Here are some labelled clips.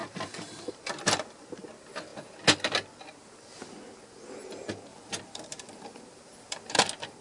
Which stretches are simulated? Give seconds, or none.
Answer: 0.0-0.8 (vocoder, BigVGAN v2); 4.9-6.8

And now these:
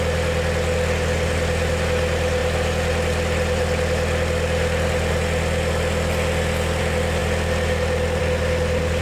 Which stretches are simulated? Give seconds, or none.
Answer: none

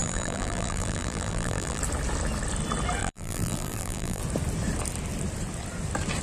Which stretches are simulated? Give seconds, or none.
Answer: 0.0-1.8 (vocoder, BigVGAN v2); 3.0-4.2

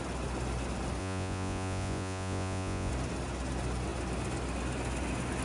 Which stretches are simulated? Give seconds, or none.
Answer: 1.0-2.9 (vocoder, Vocos)

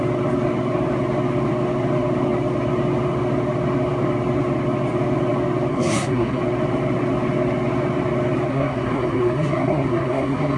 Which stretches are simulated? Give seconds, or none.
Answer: 5.7-6.4 (codec, SNAC); 8.5-10.6

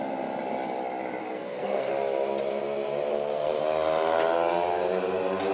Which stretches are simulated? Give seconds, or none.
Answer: 1.2-1.9 (codec, SNAC); 3.1-3.6